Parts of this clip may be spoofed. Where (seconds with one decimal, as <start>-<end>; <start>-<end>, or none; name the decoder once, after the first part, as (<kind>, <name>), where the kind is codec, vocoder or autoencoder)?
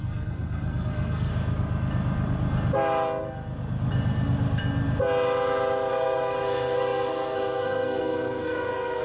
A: 0.0-1.3 (codec, SNAC); 5.9-9.0